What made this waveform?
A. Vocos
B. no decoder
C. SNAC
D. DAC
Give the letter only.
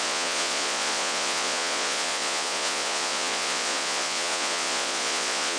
A